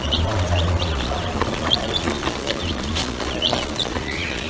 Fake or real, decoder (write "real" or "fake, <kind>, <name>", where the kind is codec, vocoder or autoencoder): fake, vocoder, Vocos